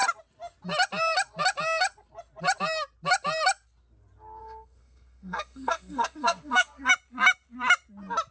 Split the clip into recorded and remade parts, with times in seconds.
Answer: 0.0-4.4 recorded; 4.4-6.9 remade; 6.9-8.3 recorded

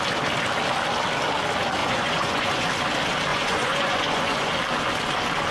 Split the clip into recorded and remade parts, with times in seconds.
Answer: 0.0-1.8 recorded; 1.8-2.7 remade; 2.7-3.3 recorded; 3.3-4.5 remade; 4.5-5.5 recorded

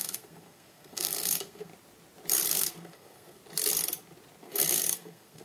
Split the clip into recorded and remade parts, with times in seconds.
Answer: 0.0-1.7 remade; 1.7-2.5 recorded; 2.5-3.4 remade; 3.4-4.4 recorded; 4.4-5.4 remade

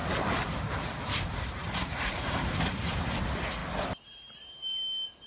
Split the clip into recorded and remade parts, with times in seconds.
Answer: 0.0-3.2 remade; 3.2-3.6 recorded; 3.6-4.5 remade; 4.5-5.3 recorded

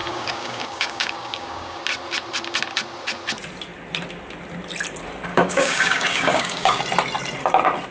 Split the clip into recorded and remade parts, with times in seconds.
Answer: 0.0-1.8 remade; 1.8-5.3 recorded; 5.3-6.8 remade; 6.8-7.9 recorded

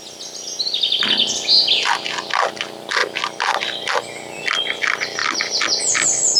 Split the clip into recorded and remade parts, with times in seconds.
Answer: 0.0-6.4 recorded

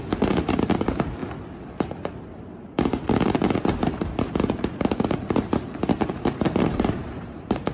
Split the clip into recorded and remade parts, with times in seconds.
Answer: 0.0-1.2 remade; 1.2-2.8 recorded; 2.8-5.5 remade; 5.5-6.1 recorded; 6.1-7.7 remade

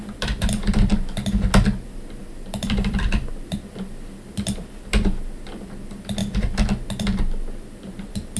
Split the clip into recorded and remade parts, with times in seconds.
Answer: 0.0-0.9 remade; 0.9-2.2 recorded; 2.2-6.2 remade; 6.2-8.0 recorded; 8.0-8.4 remade